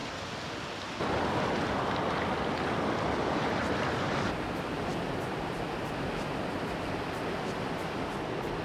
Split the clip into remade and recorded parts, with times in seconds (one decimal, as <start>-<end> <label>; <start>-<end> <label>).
0.0-8.6 recorded